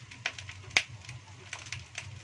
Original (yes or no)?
yes